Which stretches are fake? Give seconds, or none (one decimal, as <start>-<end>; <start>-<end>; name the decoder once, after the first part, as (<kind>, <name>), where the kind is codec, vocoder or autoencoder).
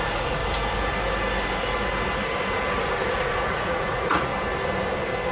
0.0-0.4 (vocoder, Vocos); 3.1-4.3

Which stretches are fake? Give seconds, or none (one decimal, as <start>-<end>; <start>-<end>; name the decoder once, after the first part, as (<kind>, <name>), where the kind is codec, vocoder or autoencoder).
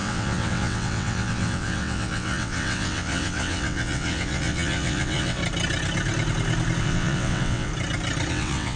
0.0-5.4 (vocoder, WaveNeXt); 6.8-7.7; 8.3-8.8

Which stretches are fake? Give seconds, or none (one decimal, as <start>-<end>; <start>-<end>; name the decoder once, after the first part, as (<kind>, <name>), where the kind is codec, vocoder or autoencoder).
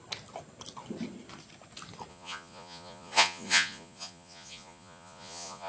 2.1-5.7 (vocoder, Vocos)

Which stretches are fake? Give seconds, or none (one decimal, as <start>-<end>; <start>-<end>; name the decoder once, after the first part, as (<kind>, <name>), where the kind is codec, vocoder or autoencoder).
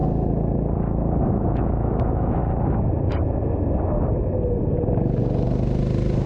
1.2-2.4 (autoencoder, DAC-VAE)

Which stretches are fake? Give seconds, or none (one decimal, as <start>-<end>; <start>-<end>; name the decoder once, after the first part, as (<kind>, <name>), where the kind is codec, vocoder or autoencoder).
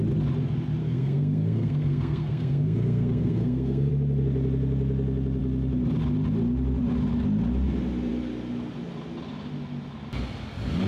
0.8-3.9 (codec, SNAC)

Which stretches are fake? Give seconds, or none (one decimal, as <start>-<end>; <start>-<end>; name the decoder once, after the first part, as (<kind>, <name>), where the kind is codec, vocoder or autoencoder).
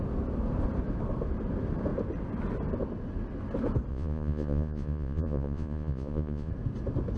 3.9-6.5 (vocoder, Vocos)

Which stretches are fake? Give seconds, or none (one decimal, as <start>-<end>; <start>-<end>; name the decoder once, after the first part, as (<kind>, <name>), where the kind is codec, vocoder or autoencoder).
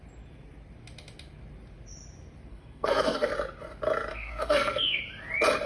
2.5-3.3 (codec, SNAC); 4.1-5.0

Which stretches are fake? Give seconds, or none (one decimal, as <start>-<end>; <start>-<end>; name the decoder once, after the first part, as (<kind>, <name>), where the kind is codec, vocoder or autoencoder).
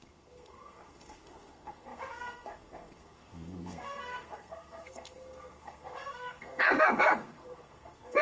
0.0-8.2 (codec, SNAC)